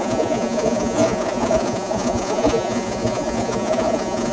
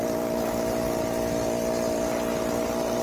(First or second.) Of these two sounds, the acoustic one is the second